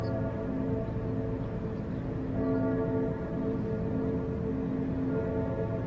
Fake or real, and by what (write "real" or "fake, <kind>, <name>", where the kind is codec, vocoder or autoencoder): real